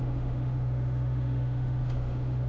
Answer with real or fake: fake